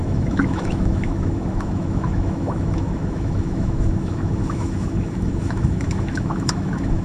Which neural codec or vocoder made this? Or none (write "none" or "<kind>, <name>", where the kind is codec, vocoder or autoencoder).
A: autoencoder, DAC-VAE